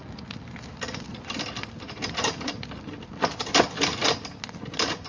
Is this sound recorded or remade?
recorded